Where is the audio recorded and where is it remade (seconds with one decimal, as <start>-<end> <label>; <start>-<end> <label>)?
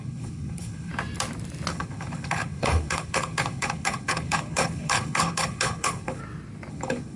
0.0-0.9 remade; 0.9-1.7 recorded; 1.7-6.2 remade; 6.2-6.7 recorded; 6.7-7.2 remade